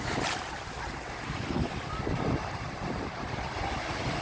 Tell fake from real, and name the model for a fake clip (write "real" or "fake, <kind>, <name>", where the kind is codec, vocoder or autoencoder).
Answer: real